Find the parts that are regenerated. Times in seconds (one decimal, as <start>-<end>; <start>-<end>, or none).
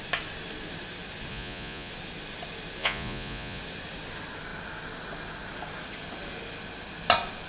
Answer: 1.3-1.9; 2.8-3.6